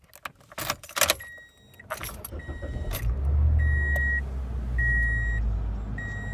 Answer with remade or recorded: recorded